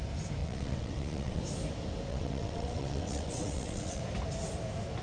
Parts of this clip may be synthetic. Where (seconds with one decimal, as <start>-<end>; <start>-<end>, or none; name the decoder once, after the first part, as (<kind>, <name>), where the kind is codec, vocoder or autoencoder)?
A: 0.4-1.4 (vocoder, WaveNeXt); 2.1-4.0